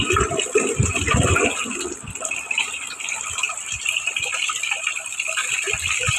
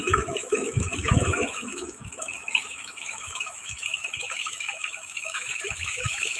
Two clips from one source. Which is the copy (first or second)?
second